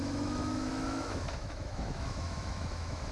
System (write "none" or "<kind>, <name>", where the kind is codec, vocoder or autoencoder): autoencoder, DAC-VAE